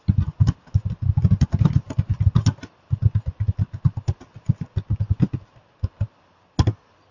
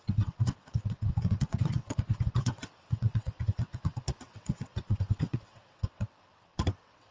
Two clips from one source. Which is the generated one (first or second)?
second